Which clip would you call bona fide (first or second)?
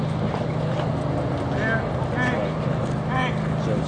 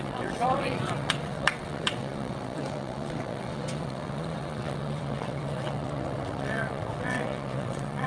first